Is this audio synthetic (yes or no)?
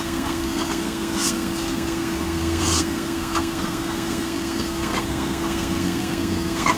yes